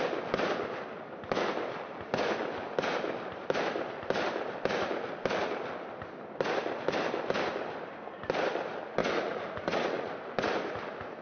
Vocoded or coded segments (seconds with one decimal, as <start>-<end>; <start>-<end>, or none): 9.0-10.1